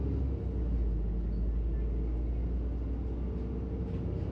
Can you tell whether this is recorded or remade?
recorded